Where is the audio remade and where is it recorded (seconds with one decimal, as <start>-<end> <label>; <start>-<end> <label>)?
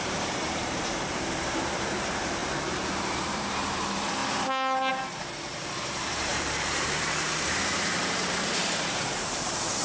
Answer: 0.0-2.4 remade; 2.4-3.2 recorded; 3.2-4.2 remade; 4.2-4.9 recorded; 4.9-9.8 remade